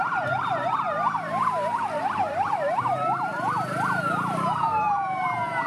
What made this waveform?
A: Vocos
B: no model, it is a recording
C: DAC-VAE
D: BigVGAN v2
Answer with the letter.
D